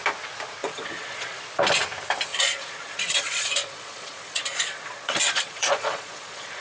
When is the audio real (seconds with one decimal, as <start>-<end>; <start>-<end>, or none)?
0.0-0.6; 1.4-2.3